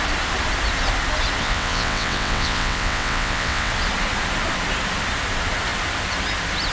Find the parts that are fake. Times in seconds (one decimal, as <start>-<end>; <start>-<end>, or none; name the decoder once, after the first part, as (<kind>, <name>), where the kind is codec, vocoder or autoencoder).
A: 1.4-3.7 (vocoder, WaveNeXt)